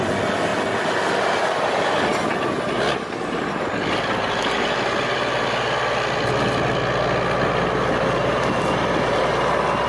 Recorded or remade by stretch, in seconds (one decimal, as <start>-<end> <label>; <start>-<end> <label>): 0.0-9.9 recorded